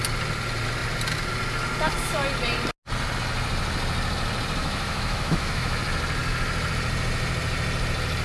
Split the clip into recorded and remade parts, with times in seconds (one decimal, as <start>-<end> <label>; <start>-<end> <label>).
0.0-4.6 recorded; 4.6-5.8 remade; 5.8-8.2 recorded